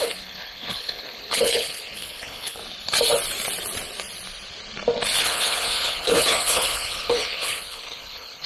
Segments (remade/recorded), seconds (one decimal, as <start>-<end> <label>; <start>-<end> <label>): 0.0-2.6 remade; 2.6-5.2 recorded; 5.2-8.5 remade